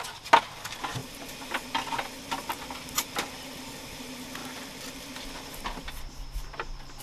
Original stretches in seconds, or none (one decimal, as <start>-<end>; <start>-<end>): 0.0-7.0